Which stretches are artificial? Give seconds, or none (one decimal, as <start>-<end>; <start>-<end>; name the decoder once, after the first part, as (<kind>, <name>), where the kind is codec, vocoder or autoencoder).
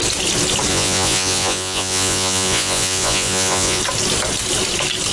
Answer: 0.7-3.8 (vocoder, Vocos)